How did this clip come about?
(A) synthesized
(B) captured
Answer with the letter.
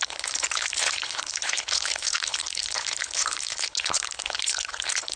A